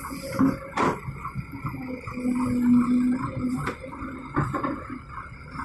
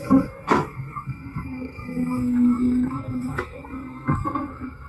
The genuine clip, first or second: first